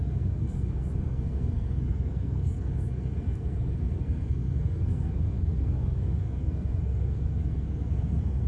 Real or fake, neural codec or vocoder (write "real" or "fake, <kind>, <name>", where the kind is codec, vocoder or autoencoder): fake, codec, SNAC